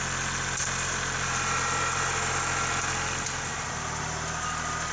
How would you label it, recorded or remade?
recorded